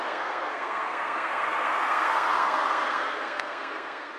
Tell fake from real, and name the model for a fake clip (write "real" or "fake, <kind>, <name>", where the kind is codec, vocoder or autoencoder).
fake, codec, SNAC